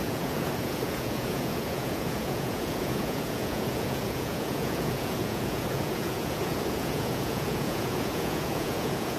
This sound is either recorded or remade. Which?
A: remade